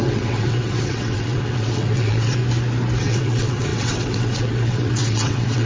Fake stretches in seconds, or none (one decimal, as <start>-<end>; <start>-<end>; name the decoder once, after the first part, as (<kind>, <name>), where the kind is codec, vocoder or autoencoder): 0.0-2.4 (vocoder, WaveNeXt); 3.0-5.7